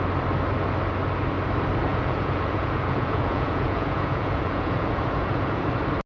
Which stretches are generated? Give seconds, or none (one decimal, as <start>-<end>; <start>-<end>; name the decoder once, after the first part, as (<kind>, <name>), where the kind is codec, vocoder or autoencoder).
1.9-5.6 (vocoder, Vocos)